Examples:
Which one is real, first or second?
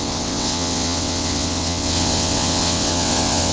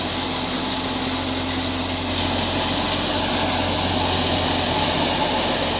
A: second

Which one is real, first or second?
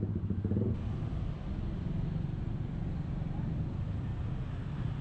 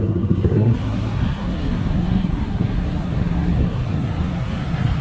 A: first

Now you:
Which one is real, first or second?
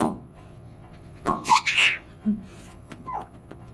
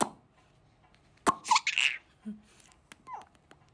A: second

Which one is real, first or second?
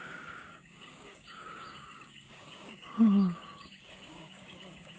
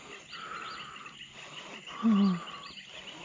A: second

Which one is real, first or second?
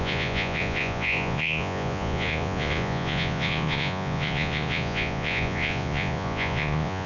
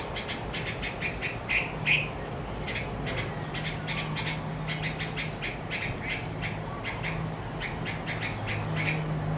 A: second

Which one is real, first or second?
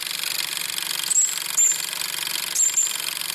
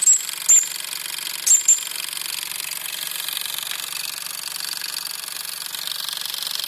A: second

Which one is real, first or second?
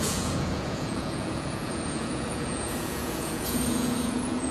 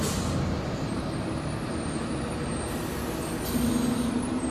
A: second